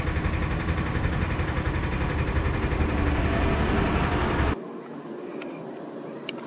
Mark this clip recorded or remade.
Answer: recorded